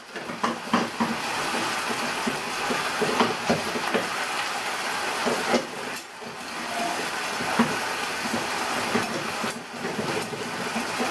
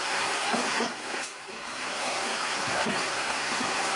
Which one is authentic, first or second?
first